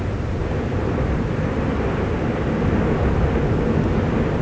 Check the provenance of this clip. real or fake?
real